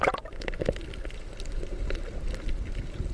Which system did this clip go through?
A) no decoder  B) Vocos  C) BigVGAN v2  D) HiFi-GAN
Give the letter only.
A